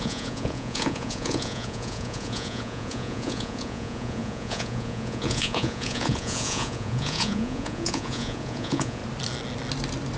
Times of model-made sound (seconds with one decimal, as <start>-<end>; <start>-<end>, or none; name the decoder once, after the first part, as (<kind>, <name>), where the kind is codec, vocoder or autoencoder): 0.0-9.0 (vocoder, Vocos)